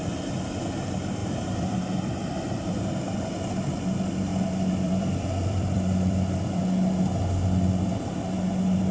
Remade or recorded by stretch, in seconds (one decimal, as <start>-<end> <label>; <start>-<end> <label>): 0.0-1.2 recorded; 1.2-2.8 remade; 2.8-4.3 recorded; 4.3-6.6 remade; 6.6-8.9 recorded